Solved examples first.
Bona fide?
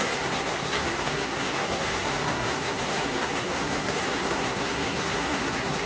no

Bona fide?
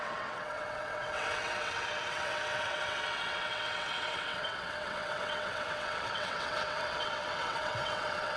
no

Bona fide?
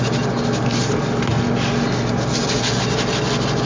yes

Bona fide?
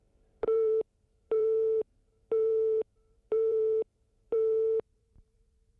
no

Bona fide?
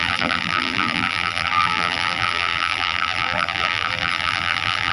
no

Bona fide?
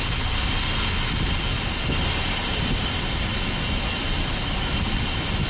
yes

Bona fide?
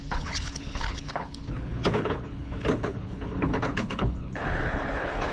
no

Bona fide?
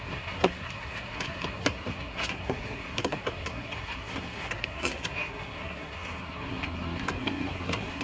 no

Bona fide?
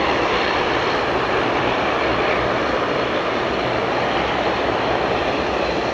no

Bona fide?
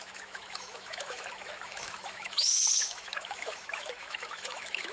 no